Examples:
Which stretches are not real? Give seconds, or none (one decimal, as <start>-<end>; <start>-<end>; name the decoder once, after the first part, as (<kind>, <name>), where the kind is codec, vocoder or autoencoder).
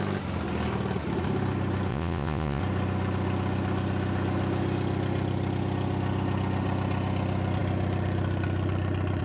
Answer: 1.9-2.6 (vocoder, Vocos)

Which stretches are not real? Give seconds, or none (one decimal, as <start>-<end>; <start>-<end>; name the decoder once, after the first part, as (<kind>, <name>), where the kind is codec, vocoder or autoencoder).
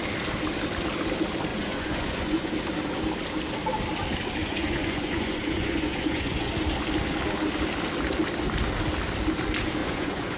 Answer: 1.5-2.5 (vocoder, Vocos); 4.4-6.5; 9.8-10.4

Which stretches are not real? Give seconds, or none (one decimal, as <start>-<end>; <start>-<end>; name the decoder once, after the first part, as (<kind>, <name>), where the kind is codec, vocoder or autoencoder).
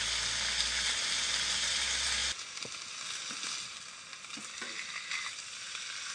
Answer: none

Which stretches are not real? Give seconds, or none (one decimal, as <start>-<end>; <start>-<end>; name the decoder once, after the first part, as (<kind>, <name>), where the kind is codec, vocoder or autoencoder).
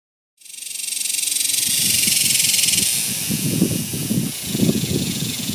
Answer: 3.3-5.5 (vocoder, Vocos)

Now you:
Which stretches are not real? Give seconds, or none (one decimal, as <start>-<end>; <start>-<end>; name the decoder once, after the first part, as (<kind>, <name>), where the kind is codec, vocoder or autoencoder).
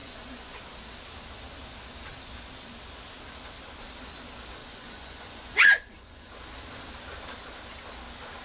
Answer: 0.0-0.6 (vocoder, Vocos); 4.6-6.3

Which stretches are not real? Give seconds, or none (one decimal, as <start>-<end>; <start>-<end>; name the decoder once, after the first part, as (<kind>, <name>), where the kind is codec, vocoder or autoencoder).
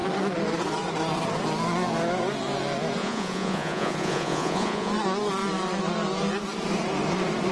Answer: 3.0-4.9 (vocoder, Vocos)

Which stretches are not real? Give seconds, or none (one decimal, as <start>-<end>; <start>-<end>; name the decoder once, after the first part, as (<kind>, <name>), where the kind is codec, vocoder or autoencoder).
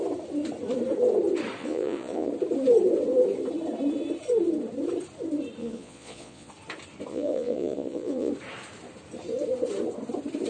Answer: 1.6-2.3 (vocoder, Vocos); 5.6-6.5; 7.1-8.3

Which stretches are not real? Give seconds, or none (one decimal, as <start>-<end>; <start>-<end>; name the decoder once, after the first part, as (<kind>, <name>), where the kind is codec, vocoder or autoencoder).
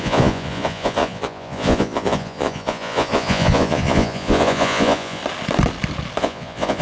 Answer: 0.0-5.2 (vocoder, Vocos); 6.2-6.8